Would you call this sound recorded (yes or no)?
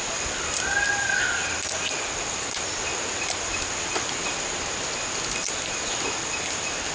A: yes